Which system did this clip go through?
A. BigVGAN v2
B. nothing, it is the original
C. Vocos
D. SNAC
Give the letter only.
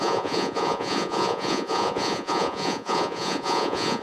C